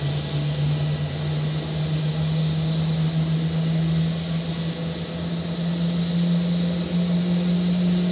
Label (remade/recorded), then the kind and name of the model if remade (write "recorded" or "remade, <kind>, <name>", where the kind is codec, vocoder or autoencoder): recorded